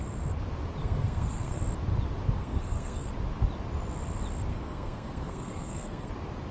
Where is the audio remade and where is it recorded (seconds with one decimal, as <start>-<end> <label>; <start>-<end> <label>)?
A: 0.0-0.8 recorded; 0.8-1.6 remade; 1.6-2.4 recorded; 2.4-3.1 remade; 3.1-4.5 recorded; 4.5-6.1 remade; 6.1-6.5 recorded